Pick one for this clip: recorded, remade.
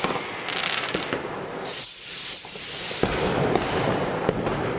recorded